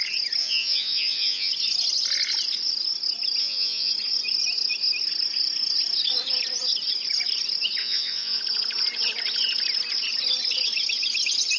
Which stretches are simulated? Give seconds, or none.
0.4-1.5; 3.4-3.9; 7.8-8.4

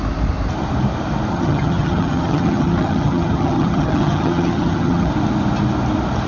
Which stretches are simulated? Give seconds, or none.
1.3-5.1

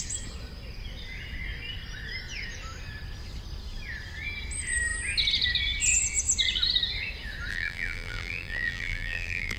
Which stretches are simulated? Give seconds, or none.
7.5-9.6

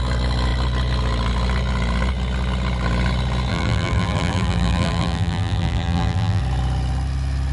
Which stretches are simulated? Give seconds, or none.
3.5-6.4

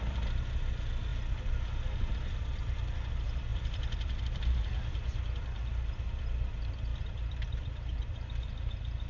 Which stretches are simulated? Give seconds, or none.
3.5-4.2; 6.9-7.5

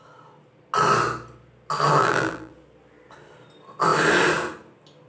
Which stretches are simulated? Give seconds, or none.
2.0-2.5